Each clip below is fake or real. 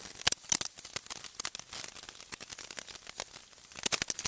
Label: real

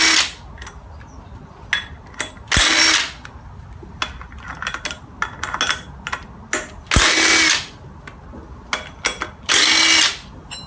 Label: real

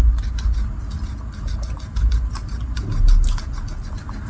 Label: real